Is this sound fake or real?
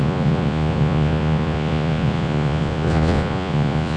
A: fake